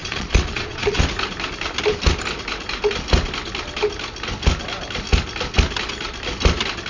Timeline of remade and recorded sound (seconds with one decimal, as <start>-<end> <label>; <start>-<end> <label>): 0.0-1.0 remade; 1.0-6.9 recorded